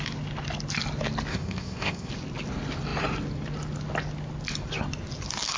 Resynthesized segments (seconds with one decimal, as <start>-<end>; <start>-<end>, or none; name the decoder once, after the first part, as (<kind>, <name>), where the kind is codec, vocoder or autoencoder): 1.3-2.1 (codec, ZipCodec)